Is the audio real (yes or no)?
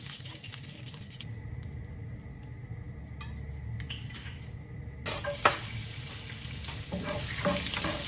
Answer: yes